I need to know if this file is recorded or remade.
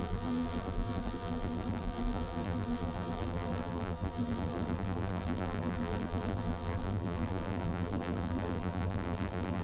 remade